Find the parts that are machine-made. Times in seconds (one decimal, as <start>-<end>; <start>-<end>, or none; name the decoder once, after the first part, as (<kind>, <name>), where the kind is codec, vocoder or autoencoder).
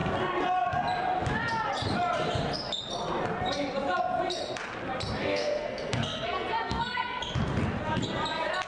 5.2-7.2 (codec, SNAC)